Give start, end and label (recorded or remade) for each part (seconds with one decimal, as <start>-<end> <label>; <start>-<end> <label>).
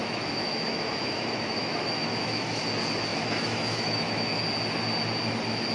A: 0.0-2.6 remade; 2.6-3.1 recorded; 3.1-4.4 remade; 4.4-5.7 recorded